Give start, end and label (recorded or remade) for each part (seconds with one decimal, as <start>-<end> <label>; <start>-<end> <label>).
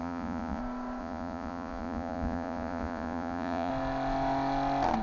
0.0-0.6 remade; 0.6-1.0 recorded; 1.0-3.7 remade; 3.7-5.0 recorded